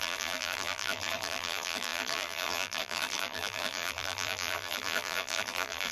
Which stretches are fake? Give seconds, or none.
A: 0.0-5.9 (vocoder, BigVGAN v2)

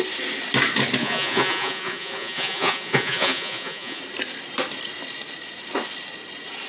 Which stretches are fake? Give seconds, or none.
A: 1.0-4.0 (vocoder, Vocos)

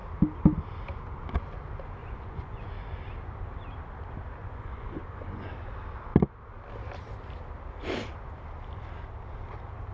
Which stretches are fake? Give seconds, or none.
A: 2.0-2.6 (vocoder, Vocos); 4.4-5.5